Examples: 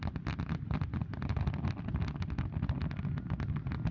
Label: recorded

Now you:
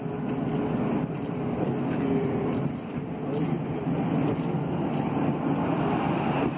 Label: recorded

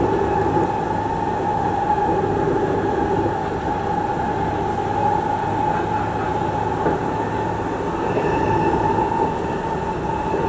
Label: recorded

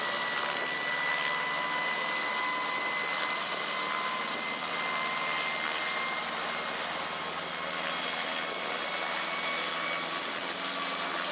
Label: recorded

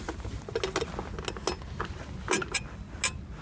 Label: recorded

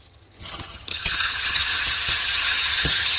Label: remade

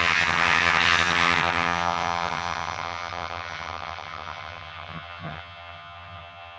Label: remade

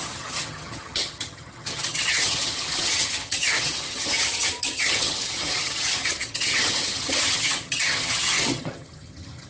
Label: remade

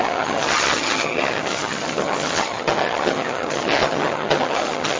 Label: remade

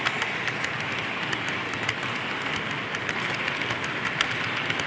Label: recorded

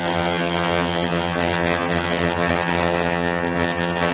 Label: remade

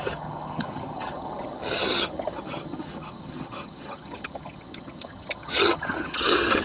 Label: remade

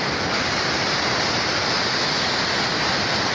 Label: recorded